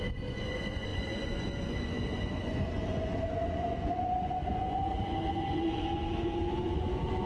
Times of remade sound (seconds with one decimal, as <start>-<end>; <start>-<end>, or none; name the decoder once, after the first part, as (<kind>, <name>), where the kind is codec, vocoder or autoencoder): 0.0-7.3 (vocoder, Vocos)